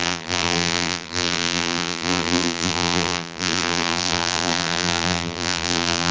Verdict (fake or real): fake